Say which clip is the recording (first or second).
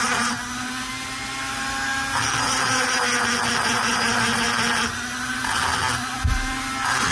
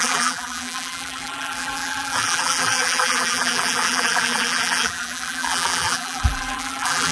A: first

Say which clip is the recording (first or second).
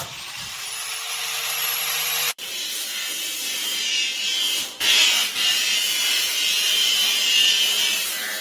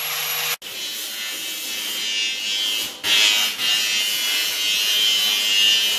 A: second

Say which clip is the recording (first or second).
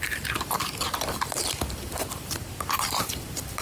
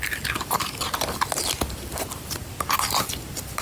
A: second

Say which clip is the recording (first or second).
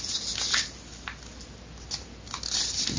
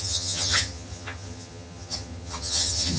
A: first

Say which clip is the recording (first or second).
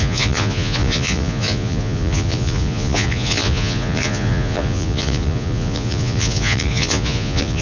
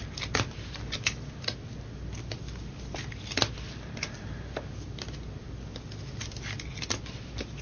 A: second